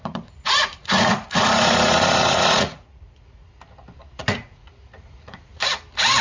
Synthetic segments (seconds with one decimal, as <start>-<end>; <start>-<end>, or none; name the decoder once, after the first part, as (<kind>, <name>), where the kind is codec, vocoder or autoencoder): 0.0-3.5 (vocoder, Vocos); 4.2-5.6